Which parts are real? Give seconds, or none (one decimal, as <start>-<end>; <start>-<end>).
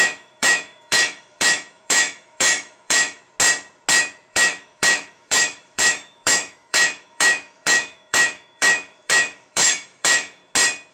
3.2-4.3; 10.4-10.9